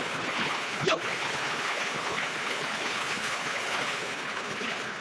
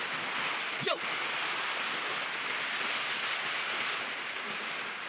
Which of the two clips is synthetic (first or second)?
first